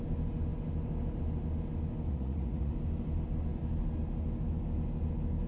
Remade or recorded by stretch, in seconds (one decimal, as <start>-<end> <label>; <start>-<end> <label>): 0.0-2.1 recorded; 2.1-2.7 remade; 2.7-5.5 recorded

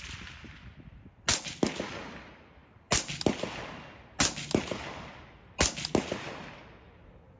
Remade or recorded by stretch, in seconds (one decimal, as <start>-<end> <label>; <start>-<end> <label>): 0.0-7.4 recorded

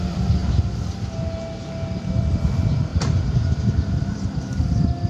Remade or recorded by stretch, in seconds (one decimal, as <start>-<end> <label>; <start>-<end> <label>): 0.0-0.4 remade; 0.4-2.2 recorded; 2.2-2.9 remade; 2.9-4.0 recorded; 4.0-5.1 remade

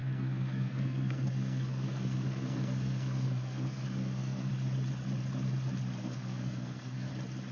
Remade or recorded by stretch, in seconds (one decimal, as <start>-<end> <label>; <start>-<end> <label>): 0.0-4.5 remade; 4.5-6.0 recorded; 6.0-7.1 remade; 7.1-7.5 recorded

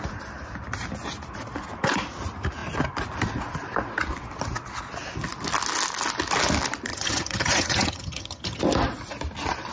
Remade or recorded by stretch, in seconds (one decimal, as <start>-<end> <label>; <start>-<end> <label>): 0.0-6.9 recorded; 6.9-8.6 remade; 8.6-9.7 recorded

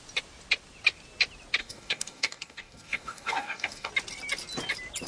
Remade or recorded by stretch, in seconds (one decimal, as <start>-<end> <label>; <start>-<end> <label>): 0.0-1.6 recorded; 1.6-3.9 remade; 3.9-5.1 recorded

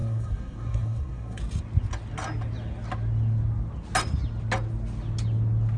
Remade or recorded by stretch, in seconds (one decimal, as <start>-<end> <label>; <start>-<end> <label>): 0.0-1.4 remade; 1.4-5.8 recorded